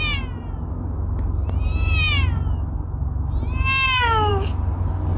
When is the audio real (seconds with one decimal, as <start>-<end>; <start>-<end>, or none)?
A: 0.0-5.2